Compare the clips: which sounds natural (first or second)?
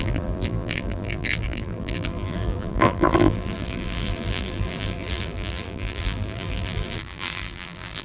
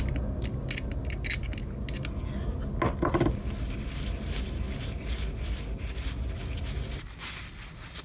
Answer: second